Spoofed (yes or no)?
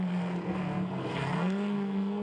yes